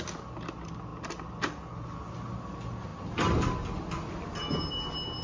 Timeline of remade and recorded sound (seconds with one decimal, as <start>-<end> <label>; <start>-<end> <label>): 0.0-5.2 recorded